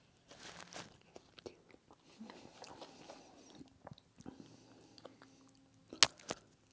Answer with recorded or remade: recorded